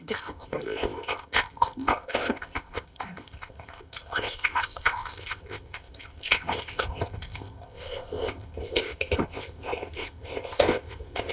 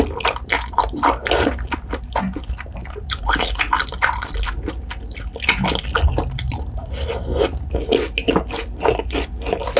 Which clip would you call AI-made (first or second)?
first